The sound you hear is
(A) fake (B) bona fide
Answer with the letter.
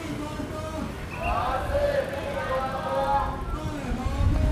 B